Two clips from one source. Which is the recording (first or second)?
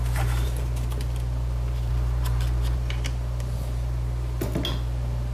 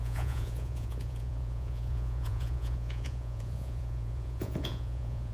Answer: first